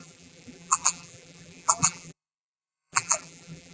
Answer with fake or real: fake